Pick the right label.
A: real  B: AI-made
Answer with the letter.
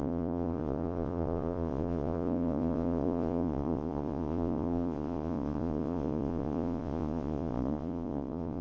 B